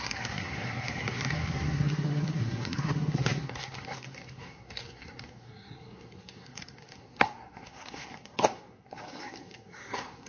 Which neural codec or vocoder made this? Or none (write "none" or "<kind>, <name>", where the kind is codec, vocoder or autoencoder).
codec, SNAC